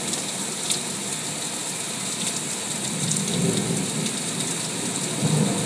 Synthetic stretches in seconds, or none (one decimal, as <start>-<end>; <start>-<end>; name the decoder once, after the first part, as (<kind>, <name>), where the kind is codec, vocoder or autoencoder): none